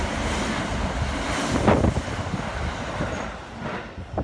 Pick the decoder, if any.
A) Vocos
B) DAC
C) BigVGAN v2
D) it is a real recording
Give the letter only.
D